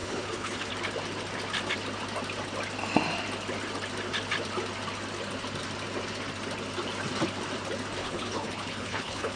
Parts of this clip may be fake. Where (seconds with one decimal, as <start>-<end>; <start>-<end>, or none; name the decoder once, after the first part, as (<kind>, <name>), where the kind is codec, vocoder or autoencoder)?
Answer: 0.0-0.7 (codec, HILCodec); 8.0-9.4